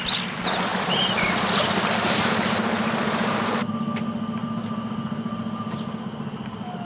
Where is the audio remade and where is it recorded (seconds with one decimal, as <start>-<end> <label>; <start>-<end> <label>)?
0.0-0.7 recorded; 0.7-3.7 remade; 3.7-4.4 recorded; 4.4-6.0 remade; 6.0-6.9 recorded